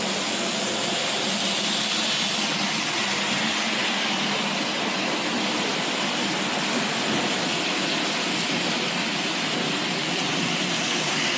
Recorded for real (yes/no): yes